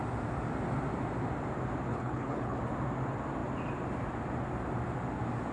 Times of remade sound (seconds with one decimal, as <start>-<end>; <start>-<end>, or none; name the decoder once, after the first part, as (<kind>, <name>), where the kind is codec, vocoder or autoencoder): 1.9-2.6 (codec, HILCodec)